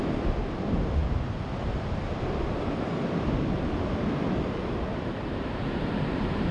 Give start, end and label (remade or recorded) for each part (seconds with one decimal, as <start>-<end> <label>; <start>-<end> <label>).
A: 0.0-1.0 recorded; 1.0-2.2 remade; 2.2-4.9 recorded; 4.9-6.5 remade